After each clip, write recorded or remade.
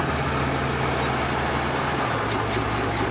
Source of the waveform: recorded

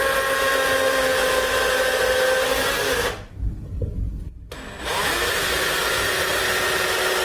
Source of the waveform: recorded